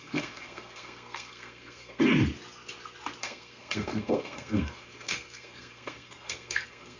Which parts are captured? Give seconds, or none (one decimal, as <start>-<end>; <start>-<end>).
2.0-3.2